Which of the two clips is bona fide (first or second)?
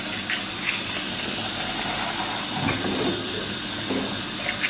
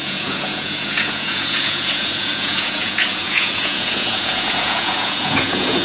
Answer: first